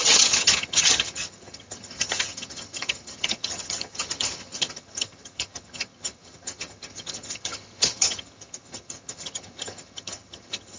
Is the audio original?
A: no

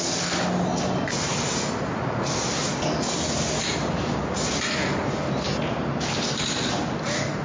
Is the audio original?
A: yes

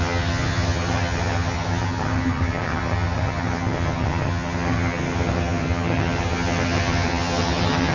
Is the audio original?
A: no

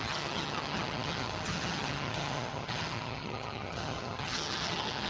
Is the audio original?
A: no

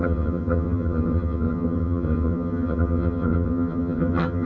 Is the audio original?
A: no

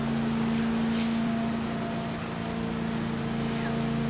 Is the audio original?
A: yes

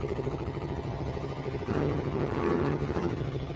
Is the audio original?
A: no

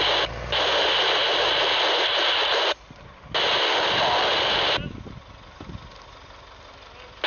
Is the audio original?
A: yes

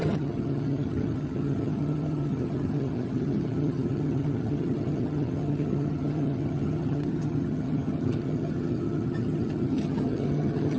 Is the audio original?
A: no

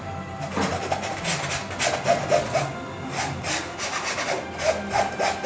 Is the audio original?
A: yes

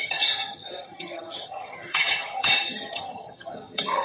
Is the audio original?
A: no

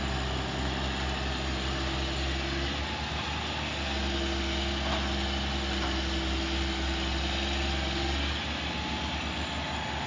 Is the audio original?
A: yes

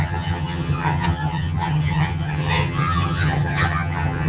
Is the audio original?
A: no